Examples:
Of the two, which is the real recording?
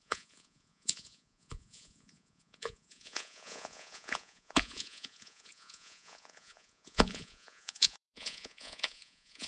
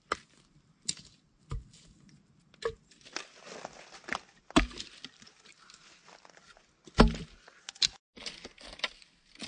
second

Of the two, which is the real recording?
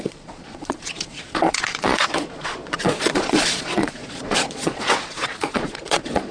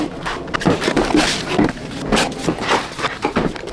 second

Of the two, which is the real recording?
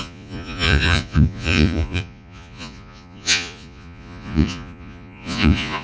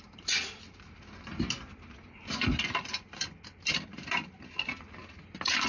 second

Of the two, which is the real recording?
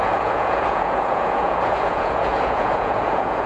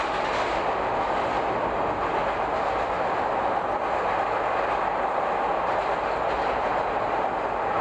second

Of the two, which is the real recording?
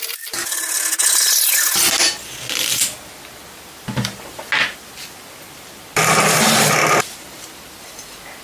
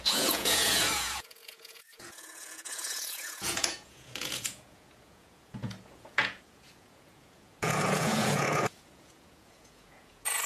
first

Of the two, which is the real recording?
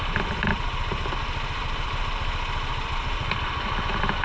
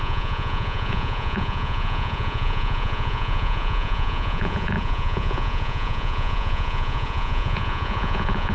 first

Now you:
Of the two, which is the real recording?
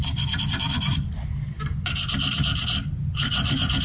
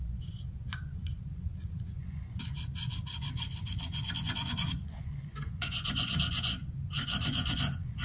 first